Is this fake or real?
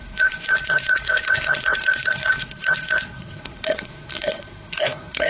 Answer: fake